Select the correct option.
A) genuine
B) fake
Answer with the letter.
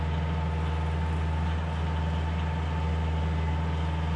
A